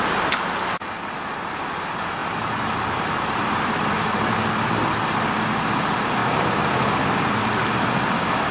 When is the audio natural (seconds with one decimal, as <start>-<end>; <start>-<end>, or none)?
0.0-8.5